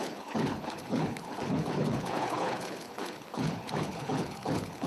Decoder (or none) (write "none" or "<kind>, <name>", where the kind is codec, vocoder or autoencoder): codec, HILCodec